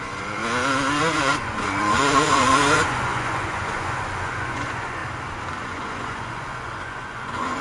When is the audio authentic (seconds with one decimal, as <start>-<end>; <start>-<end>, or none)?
0.4-1.0; 5.0-5.6